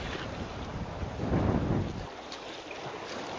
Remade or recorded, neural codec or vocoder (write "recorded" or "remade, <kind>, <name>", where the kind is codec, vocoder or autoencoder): recorded